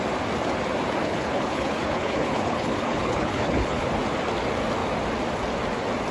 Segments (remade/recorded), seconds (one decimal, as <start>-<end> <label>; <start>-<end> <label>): 0.0-1.0 recorded; 1.0-3.9 remade; 3.9-6.1 recorded